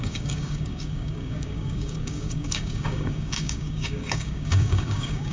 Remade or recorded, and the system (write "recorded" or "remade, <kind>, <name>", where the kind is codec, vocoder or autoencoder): remade, codec, DAC